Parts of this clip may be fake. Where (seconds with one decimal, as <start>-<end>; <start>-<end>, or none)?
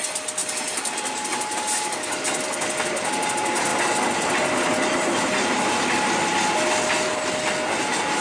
none